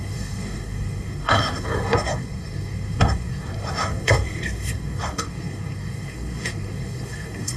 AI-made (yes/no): yes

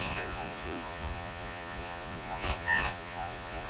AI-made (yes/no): yes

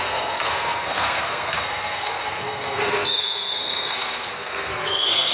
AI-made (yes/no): yes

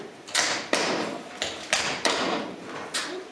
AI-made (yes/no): yes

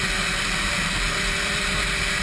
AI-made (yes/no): yes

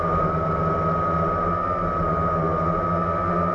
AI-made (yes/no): no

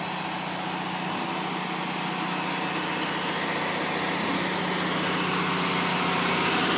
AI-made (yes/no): no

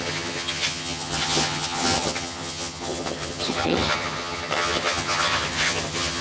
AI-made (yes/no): yes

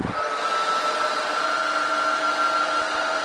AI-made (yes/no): no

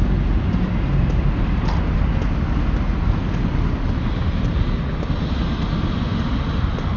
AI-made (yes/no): no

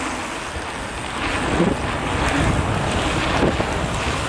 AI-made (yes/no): no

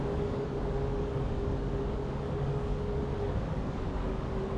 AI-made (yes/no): yes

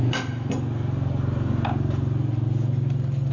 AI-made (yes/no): no